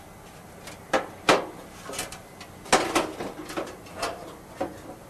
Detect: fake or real real